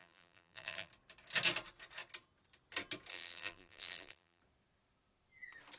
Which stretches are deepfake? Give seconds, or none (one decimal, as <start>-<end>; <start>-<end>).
0.0-0.9; 3.1-4.4